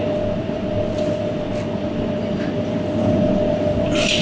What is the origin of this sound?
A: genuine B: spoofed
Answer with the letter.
A